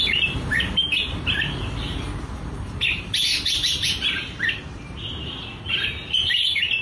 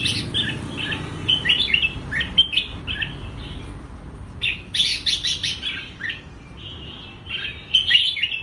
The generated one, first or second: first